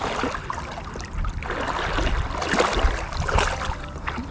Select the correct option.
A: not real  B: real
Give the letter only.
B